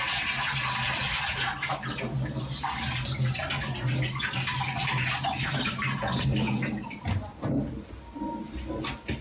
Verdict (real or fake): real